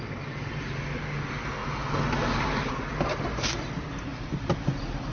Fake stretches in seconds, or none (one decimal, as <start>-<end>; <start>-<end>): none